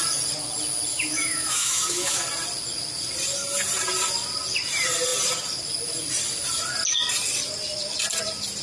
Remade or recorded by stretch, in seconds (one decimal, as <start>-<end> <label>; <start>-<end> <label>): 0.0-0.9 recorded; 0.9-2.2 remade; 2.2-8.6 recorded